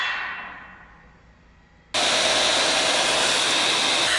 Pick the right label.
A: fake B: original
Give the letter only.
B